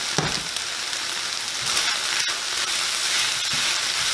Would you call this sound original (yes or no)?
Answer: yes